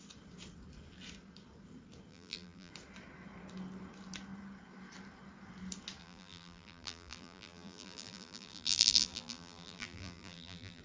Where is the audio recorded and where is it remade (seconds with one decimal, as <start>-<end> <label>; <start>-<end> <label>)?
0.0-2.1 recorded; 2.1-2.7 remade; 2.7-6.0 recorded; 6.0-10.8 remade